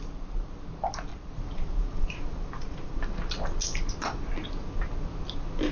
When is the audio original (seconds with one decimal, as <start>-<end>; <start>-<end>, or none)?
0.0-1.1; 3.0-5.7